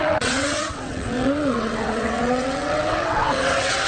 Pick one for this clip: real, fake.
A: fake